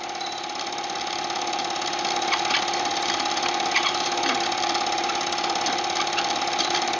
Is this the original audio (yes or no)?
no